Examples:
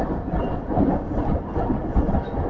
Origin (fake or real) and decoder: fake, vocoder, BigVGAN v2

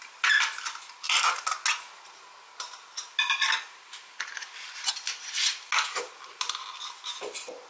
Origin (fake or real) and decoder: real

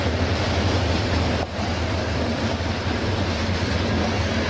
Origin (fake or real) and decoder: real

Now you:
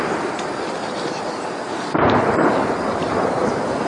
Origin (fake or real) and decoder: fake, vocoder, BigVGAN v2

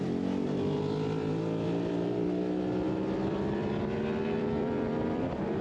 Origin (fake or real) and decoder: fake, vocoder, BigVGAN v2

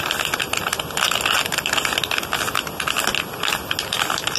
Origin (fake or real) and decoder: real